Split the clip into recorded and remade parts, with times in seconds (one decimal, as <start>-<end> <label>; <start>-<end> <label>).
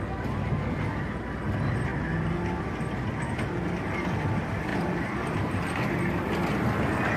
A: 0.0-4.7 recorded; 4.7-5.6 remade; 5.6-7.2 recorded